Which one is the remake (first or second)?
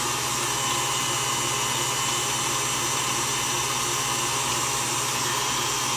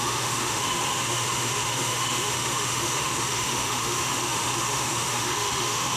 second